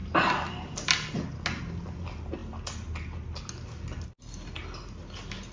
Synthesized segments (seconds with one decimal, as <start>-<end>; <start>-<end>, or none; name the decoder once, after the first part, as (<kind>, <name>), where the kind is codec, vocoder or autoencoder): none